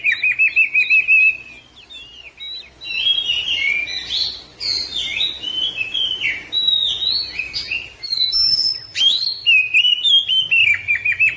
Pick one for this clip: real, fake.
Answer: real